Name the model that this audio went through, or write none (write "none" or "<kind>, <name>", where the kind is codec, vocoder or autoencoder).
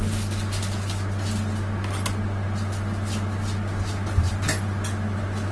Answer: none